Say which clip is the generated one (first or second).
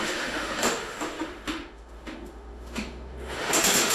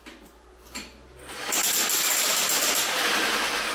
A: first